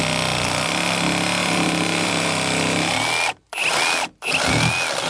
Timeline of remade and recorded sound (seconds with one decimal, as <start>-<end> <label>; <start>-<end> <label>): 0.0-1.4 recorded; 1.4-2.9 remade; 2.9-5.1 recorded